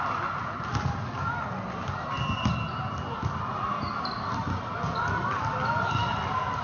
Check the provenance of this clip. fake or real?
real